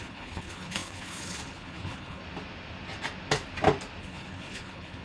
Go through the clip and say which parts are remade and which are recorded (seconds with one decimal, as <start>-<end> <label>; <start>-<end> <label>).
0.0-2.2 remade; 2.2-4.0 recorded; 4.0-5.0 remade